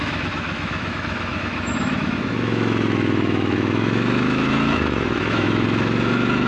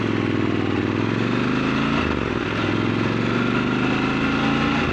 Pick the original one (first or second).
second